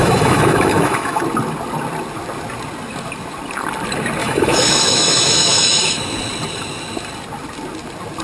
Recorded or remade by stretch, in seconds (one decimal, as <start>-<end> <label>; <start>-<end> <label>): 0.0-1.2 remade; 1.2-4.2 recorded; 4.2-5.8 remade; 5.8-8.2 recorded